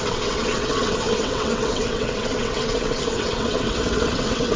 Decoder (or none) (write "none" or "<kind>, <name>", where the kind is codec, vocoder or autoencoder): vocoder, WaveNeXt